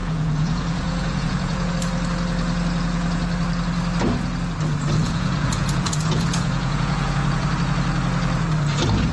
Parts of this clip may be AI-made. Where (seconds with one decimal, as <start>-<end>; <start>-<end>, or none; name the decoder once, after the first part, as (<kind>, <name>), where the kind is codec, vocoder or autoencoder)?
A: 0.0-1.7 (vocoder, Vocos); 5.0-7.5